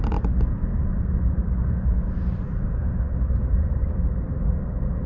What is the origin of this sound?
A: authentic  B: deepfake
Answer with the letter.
A